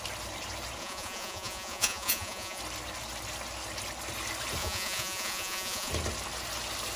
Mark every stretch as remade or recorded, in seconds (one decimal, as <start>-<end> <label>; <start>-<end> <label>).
0.0-0.8 recorded; 0.8-2.6 remade; 2.6-4.6 recorded; 4.6-5.9 remade; 5.9-7.0 recorded

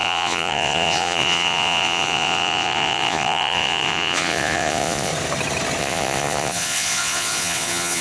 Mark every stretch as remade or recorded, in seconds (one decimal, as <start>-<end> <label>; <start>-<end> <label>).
0.0-5.1 remade; 5.1-5.8 recorded; 5.8-8.0 remade

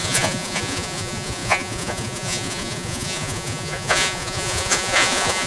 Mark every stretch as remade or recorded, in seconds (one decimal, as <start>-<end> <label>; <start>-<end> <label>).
0.0-5.5 remade

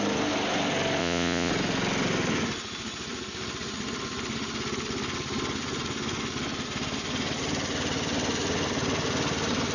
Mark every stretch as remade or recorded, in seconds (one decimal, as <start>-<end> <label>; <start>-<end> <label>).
0.0-1.0 recorded; 1.0-1.5 remade; 1.5-9.7 recorded

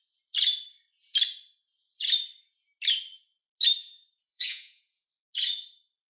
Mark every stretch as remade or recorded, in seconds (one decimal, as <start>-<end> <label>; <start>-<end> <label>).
0.0-3.8 recorded; 3.8-5.1 remade; 5.1-6.2 recorded

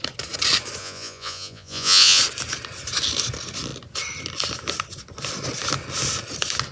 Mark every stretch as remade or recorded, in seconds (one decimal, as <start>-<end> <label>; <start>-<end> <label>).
0.0-0.8 recorded; 0.8-2.2 remade; 2.2-6.7 recorded

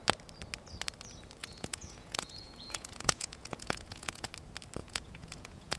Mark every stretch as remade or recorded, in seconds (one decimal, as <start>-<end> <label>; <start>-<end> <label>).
0.0-1.4 recorded; 1.4-4.3 remade; 4.3-4.8 recorded; 4.8-5.8 remade